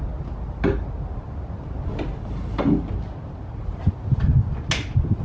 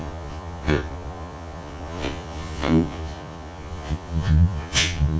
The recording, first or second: first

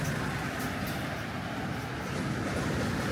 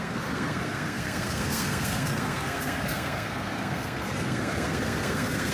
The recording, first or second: first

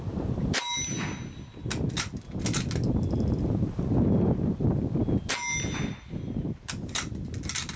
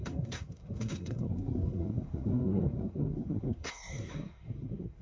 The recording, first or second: first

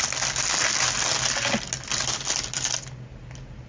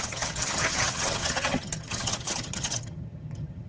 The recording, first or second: first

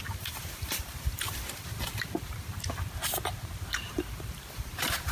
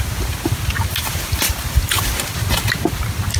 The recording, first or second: second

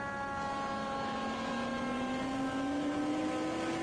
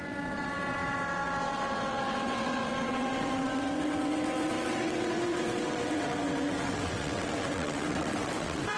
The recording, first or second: first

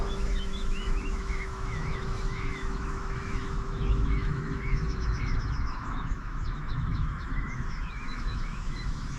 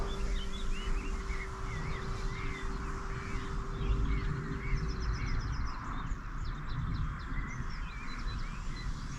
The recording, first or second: second